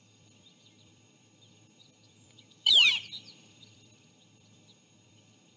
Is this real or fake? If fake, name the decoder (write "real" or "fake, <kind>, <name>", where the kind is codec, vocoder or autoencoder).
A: fake, vocoder, BigVGAN v2